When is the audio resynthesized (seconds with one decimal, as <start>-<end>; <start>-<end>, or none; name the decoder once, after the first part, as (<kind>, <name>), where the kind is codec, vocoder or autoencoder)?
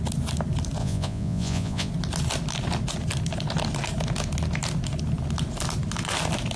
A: 0.8-1.9 (vocoder, Vocos)